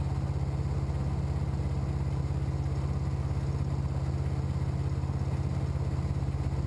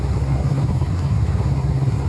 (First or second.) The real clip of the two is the first